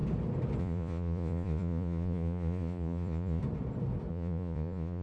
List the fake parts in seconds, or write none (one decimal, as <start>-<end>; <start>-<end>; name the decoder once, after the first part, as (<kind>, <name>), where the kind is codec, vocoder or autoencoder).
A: 0.6-3.4 (vocoder, Vocos); 4.1-5.0